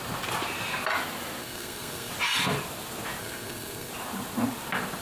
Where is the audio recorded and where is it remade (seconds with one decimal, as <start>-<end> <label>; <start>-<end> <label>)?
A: 0.0-1.4 recorded; 1.4-2.1 remade; 2.1-3.2 recorded; 3.2-3.9 remade; 3.9-5.0 recorded